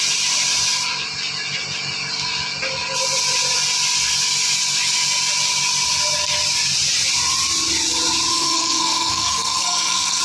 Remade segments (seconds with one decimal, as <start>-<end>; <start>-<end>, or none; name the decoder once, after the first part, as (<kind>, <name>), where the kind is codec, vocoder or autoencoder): 8.3-10.2 (codec, SNAC)